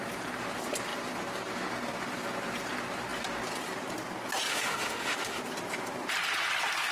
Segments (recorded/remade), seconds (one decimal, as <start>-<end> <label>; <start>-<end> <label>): 0.0-4.5 recorded; 4.5-5.4 remade; 5.4-6.9 recorded

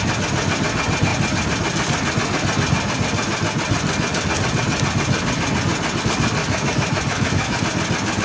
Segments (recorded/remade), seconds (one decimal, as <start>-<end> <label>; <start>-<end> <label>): 0.0-6.4 recorded; 6.4-7.6 remade; 7.6-8.2 recorded

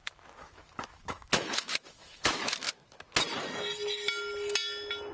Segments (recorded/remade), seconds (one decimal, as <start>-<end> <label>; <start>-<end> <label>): 0.0-3.1 remade; 3.1-5.1 recorded

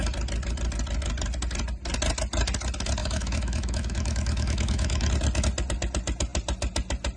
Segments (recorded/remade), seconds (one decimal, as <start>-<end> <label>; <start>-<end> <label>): 0.0-3.0 recorded; 3.0-5.1 remade; 5.1-7.2 recorded